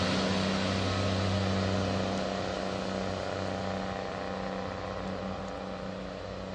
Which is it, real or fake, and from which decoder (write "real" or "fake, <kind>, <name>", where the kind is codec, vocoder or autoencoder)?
real